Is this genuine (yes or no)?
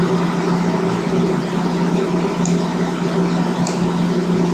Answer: yes